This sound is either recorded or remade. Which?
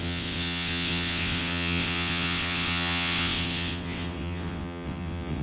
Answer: remade